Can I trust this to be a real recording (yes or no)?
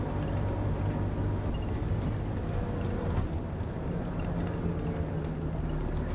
yes